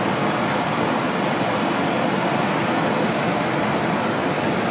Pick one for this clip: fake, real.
real